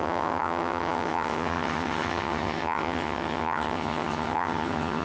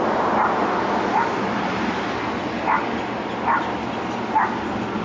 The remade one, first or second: first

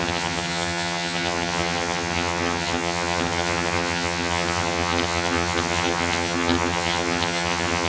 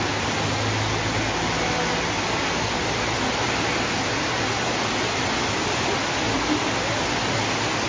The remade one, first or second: first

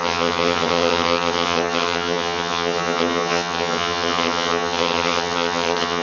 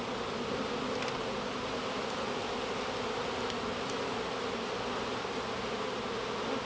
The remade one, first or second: first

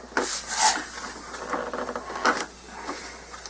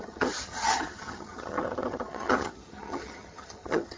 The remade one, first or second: second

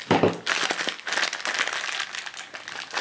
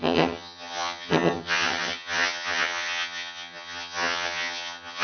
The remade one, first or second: second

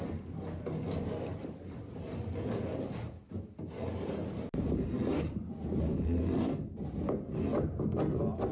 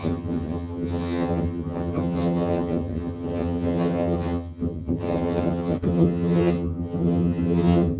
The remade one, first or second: second